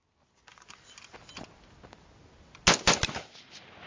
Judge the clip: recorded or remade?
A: recorded